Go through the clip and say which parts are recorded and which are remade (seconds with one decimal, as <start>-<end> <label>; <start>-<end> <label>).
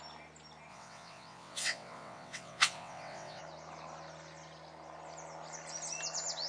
0.0-0.7 recorded; 0.7-3.4 remade; 3.4-6.5 recorded